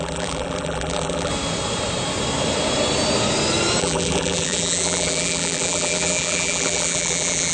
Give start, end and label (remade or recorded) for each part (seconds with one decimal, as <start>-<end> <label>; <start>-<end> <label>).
0.0-1.3 remade; 1.3-3.8 recorded; 3.8-7.5 remade